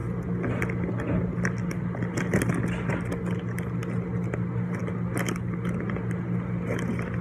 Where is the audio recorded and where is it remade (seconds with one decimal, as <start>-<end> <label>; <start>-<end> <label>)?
0.0-7.2 recorded